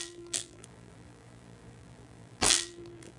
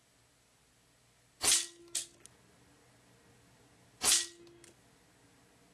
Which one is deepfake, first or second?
first